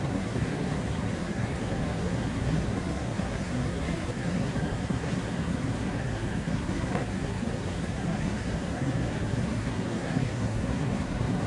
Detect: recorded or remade remade